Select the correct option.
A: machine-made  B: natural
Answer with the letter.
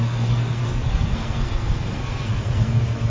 A